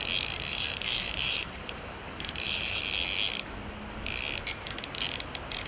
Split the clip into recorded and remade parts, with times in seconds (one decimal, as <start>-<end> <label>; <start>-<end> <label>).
0.0-0.5 recorded; 0.5-2.8 remade; 2.8-5.7 recorded

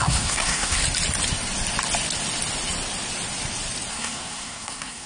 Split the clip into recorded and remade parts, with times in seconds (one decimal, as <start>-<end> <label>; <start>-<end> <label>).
0.0-0.8 remade; 0.8-3.9 recorded; 3.9-5.1 remade

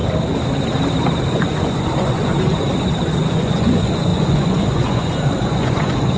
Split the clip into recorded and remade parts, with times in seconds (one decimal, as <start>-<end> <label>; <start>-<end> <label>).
0.0-1.3 recorded; 1.3-2.3 remade; 2.3-3.3 recorded; 3.3-6.2 remade

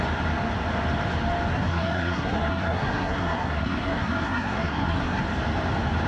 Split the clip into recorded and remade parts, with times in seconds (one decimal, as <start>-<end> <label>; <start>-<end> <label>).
0.0-1.5 recorded; 1.5-5.2 remade; 5.2-6.1 recorded

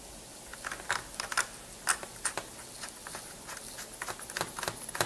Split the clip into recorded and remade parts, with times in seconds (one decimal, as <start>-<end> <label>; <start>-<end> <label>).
0.0-5.1 recorded

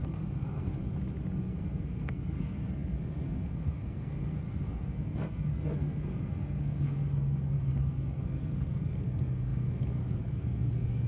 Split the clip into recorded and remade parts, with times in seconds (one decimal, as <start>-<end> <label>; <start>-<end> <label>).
0.0-0.8 remade; 0.8-1.4 recorded; 1.4-11.1 remade

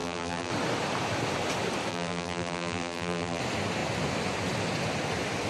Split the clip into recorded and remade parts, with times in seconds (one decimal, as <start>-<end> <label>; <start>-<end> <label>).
0.0-0.5 remade; 0.5-1.9 recorded; 1.9-3.4 remade; 3.4-5.5 recorded